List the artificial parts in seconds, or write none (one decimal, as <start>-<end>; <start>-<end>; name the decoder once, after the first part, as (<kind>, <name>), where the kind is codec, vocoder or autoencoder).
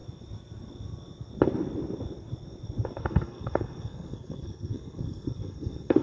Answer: 3.0-6.0 (codec, SNAC)